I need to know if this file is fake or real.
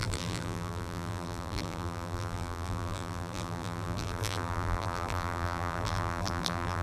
fake